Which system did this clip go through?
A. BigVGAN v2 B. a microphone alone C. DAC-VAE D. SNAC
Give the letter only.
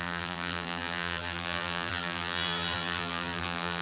A